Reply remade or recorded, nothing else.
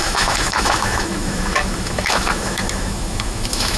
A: remade